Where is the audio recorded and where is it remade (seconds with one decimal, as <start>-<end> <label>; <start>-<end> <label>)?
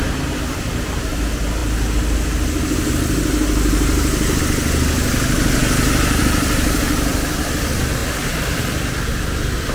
0.0-9.7 recorded